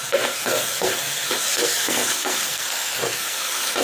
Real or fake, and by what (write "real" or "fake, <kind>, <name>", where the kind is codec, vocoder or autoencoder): fake, codec, SNAC